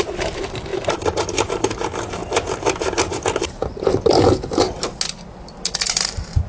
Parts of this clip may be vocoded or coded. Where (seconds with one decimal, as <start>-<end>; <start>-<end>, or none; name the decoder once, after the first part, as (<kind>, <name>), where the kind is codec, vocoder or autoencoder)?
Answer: 0.0-2.2 (vocoder, BigVGAN v2); 3.1-3.6; 5.8-6.5